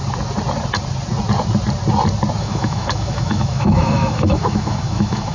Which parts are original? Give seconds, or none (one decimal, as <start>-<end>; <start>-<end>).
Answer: 0.0-2.4